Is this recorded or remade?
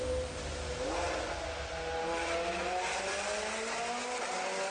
recorded